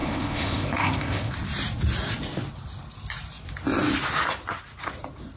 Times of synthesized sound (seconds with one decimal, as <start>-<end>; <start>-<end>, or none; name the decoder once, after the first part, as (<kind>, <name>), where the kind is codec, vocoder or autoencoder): 0.0-1.3 (codec, ZipCodec)

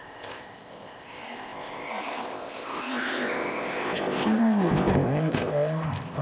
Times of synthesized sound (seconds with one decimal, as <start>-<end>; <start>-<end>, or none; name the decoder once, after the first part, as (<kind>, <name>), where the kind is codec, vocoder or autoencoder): 0.0-6.2 (codec, ZipCodec)

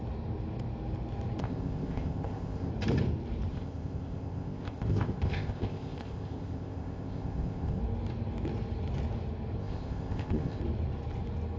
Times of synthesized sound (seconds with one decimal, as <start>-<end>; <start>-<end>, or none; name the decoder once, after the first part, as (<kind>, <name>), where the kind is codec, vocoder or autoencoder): 1.4-2.7 (codec, ZipCodec); 3.5-7.8; 9.6-10.6

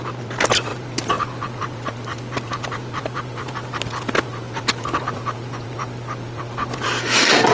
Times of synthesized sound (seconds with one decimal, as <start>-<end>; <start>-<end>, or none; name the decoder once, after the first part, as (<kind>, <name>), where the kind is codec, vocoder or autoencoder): none

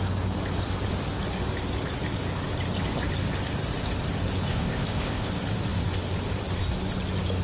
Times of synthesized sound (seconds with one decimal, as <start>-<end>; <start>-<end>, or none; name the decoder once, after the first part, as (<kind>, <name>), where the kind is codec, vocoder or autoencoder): 4.5-5.3 (codec, ZipCodec)

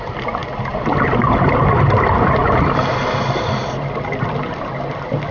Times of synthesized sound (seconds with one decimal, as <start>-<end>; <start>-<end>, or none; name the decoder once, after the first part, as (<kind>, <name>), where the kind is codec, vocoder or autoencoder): none

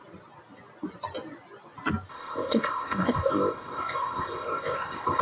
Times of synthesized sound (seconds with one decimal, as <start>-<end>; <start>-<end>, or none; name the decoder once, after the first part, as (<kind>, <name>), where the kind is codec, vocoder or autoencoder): 2.1-5.2 (codec, ZipCodec)